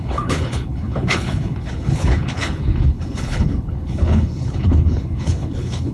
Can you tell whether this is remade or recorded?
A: remade